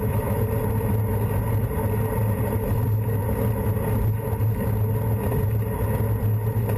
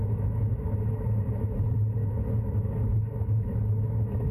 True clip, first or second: first